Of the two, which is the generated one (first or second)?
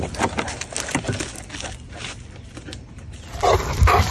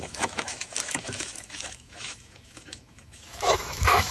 second